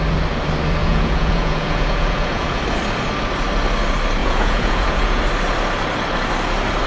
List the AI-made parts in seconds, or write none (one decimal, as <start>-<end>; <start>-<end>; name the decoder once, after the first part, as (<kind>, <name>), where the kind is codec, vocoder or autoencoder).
0.8-2.6 (vocoder, Vocos); 4.2-5.2